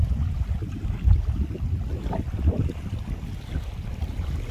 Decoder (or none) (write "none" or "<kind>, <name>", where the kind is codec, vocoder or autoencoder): none